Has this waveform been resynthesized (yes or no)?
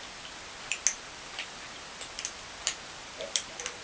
no